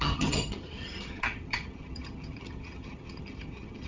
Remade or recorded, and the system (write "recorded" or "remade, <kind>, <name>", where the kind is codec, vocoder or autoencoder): remade, vocoder, HiFi-GAN